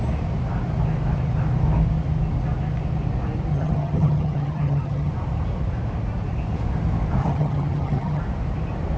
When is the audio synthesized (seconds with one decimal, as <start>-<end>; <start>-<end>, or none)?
3.5-5.1; 7.2-8.2